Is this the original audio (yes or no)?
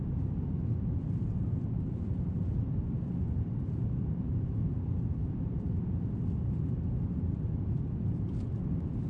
no